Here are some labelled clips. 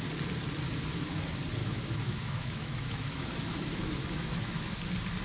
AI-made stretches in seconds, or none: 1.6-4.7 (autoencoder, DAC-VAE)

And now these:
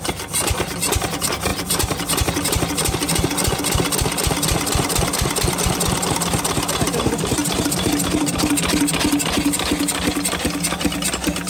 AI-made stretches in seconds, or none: none